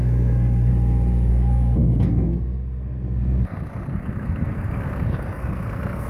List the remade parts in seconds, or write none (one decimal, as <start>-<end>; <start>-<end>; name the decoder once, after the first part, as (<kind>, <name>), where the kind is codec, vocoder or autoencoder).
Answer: 0.0-0.7 (codec, SNAC); 1.3-6.1